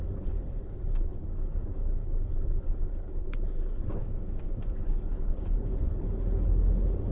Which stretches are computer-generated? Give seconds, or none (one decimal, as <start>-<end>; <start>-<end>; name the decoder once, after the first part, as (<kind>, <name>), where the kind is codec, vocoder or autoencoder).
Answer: 0.0-4.0 (codec, HILCodec); 4.7-7.1